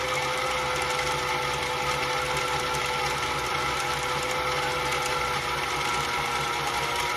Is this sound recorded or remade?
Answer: recorded